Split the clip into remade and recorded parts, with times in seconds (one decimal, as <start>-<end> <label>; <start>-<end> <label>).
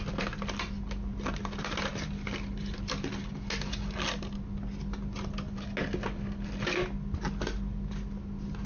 0.0-8.7 recorded